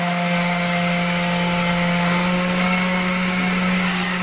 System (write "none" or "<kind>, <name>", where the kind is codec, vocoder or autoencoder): codec, DAC